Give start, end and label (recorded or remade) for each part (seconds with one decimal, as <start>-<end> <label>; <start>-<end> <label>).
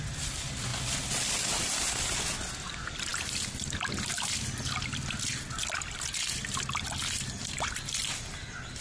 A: 0.0-8.8 recorded